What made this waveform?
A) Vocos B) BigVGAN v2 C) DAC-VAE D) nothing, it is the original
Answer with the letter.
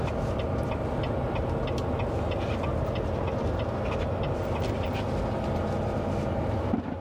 D